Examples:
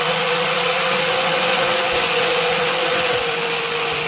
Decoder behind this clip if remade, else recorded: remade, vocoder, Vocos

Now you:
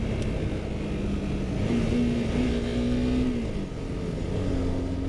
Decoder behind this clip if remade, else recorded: recorded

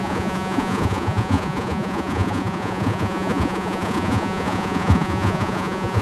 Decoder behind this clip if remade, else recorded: remade, vocoder, Vocos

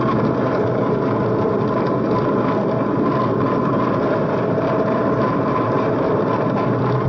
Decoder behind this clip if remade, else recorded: recorded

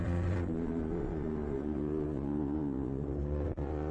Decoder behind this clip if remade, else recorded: remade, vocoder, Vocos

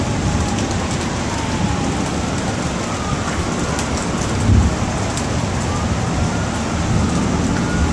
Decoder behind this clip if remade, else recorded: recorded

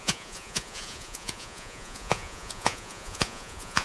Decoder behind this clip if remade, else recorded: remade, vocoder, Vocos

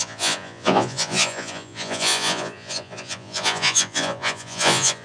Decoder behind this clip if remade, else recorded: remade, vocoder, Vocos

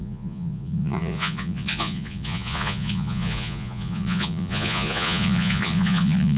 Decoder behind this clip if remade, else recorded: remade, vocoder, Vocos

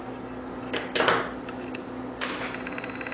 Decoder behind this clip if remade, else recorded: recorded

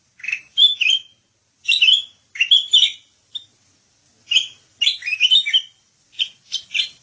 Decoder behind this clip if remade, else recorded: recorded